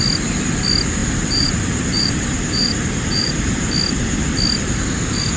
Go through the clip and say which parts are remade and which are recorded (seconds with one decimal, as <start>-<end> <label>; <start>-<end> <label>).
0.0-1.0 recorded; 1.0-3.5 remade; 3.5-5.4 recorded